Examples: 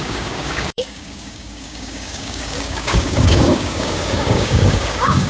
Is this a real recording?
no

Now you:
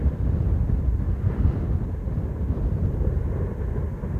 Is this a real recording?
yes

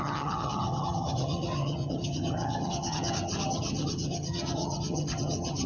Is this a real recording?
no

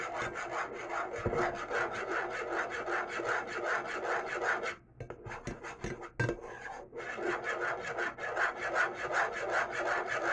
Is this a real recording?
yes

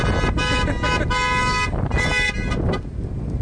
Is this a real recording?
yes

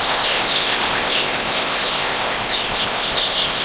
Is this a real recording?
no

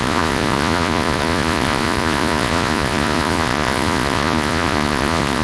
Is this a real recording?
no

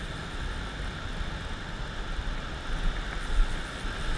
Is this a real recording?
yes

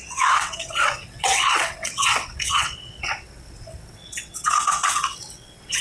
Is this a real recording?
no